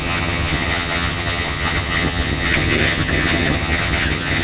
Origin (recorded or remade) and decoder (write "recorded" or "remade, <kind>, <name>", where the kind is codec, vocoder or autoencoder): remade, vocoder, HiFi-GAN